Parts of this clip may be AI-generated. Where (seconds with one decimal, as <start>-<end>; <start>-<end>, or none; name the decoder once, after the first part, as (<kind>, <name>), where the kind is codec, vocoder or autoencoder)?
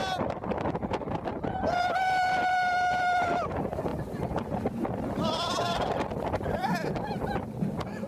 none